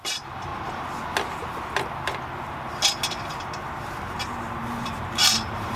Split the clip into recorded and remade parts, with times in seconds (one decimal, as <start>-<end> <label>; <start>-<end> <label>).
0.0-0.5 remade; 0.5-4.0 recorded; 4.0-5.8 remade